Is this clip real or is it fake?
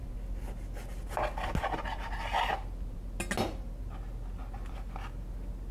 real